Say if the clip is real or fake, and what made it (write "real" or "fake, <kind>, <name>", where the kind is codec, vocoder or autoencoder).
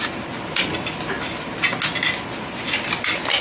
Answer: real